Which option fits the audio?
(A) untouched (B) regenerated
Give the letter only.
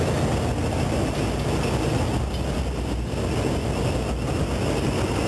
A